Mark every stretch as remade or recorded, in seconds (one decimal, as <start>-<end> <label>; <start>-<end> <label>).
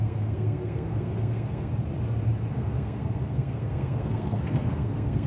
0.0-1.7 remade; 1.7-2.5 recorded; 2.5-5.3 remade